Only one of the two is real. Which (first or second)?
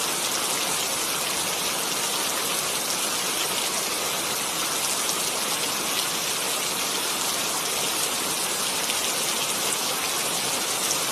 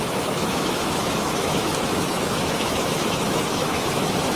first